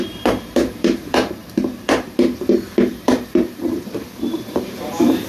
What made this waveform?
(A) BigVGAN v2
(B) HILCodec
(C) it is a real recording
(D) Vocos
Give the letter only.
A